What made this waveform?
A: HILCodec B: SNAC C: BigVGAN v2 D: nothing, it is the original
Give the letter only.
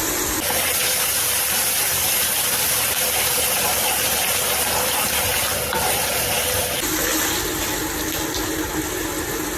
D